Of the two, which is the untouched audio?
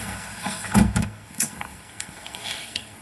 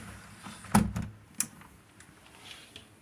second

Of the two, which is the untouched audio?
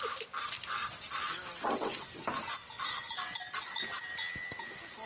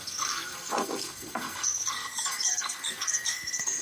first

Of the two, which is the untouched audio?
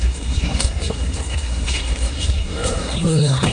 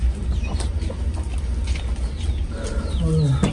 second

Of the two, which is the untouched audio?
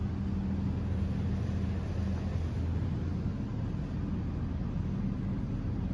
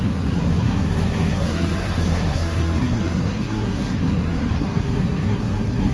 first